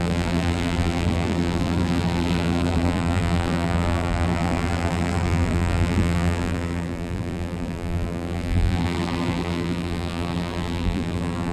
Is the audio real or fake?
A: fake